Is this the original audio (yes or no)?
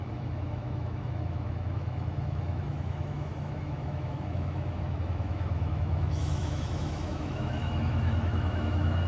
no